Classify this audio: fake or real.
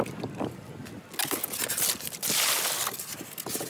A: real